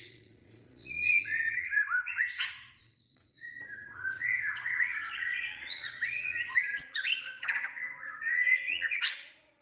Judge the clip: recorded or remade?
remade